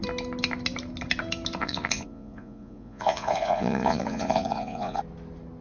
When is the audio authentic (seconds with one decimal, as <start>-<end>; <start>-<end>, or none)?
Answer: 0.0-1.6; 5.0-5.6